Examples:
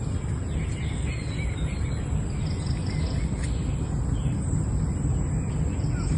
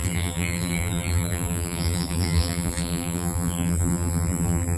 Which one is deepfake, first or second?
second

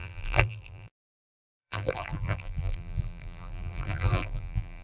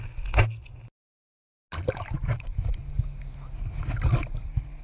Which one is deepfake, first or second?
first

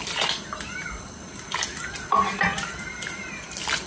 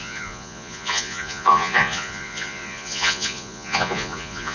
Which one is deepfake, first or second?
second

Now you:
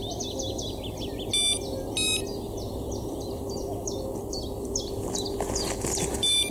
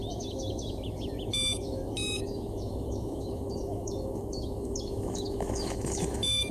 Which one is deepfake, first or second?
second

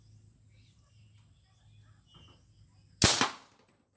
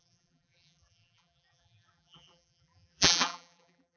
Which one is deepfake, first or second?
second